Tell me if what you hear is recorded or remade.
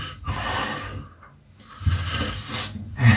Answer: recorded